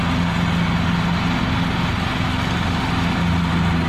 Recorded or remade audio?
recorded